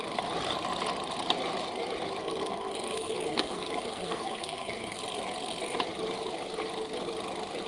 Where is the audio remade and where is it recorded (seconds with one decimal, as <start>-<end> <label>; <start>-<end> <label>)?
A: 0.0-2.2 recorded; 2.2-5.0 remade; 5.0-7.7 recorded